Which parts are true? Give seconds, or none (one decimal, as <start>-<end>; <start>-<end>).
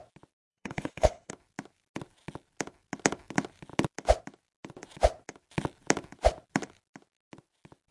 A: 0.0-0.5; 1.3-7.9